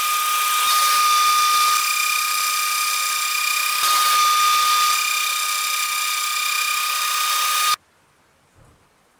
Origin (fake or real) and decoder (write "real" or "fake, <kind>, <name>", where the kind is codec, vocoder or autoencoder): real